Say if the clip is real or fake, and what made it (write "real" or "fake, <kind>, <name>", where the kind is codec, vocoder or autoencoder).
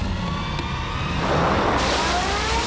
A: real